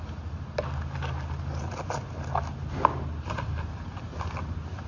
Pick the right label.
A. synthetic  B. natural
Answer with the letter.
B